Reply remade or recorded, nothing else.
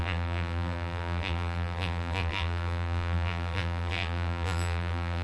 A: remade